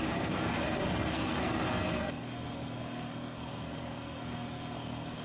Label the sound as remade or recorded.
remade